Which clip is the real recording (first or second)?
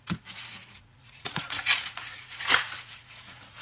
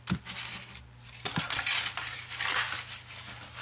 second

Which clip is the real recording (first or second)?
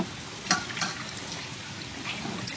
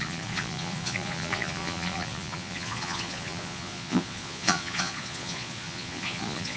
first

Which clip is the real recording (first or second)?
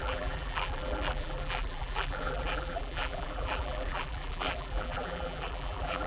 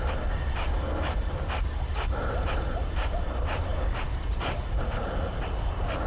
second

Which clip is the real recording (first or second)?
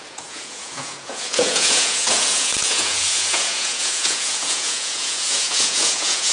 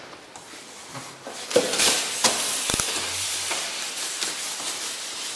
second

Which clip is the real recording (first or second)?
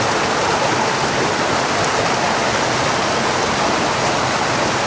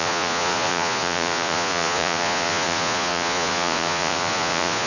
first